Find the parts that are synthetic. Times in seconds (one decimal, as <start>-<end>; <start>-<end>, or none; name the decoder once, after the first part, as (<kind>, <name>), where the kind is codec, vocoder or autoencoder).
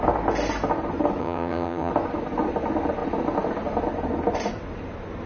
1.2-1.9 (vocoder, HiFi-GAN)